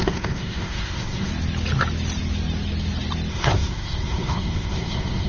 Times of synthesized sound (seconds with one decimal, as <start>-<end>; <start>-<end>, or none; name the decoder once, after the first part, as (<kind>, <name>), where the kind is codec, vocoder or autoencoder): 0.0-1.3 (codec, SNAC); 3.3-5.3